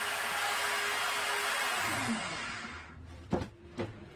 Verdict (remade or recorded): recorded